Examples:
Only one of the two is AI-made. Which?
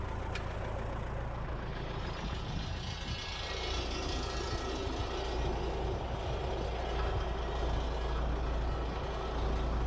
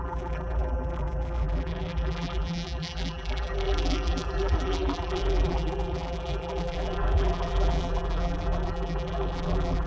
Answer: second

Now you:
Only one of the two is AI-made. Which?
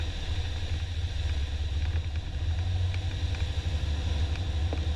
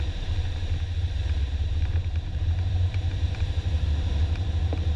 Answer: second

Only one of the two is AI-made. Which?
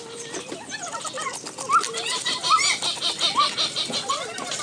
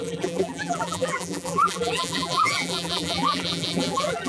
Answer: second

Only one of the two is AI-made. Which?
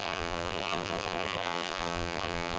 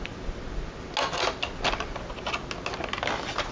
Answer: first